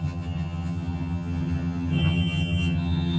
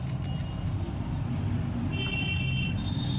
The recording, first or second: second